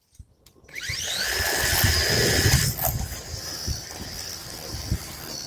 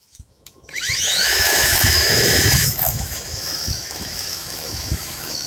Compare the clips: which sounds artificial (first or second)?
second